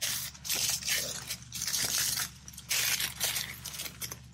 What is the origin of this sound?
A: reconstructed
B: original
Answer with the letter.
B